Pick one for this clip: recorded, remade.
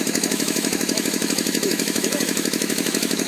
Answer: remade